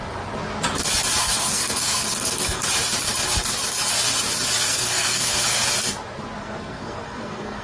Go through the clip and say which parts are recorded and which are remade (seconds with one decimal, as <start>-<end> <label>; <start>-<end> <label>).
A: 0.0-1.2 recorded; 1.2-2.6 remade; 2.6-4.6 recorded; 4.6-5.6 remade; 5.6-6.4 recorded; 6.4-7.6 remade